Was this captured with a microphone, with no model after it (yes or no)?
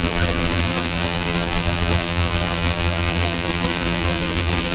no